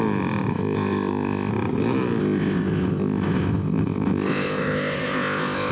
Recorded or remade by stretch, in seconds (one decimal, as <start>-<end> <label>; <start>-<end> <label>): 0.0-0.5 recorded; 0.5-1.5 remade; 1.5-2.2 recorded; 2.2-5.7 remade